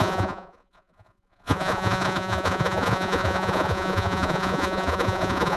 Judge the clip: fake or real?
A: fake